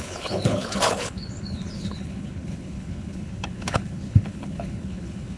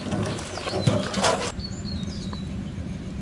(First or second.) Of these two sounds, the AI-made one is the first